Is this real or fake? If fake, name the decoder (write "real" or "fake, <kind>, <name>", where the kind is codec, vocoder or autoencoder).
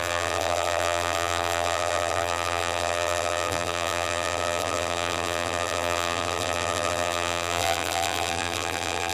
fake, vocoder, BigVGAN v2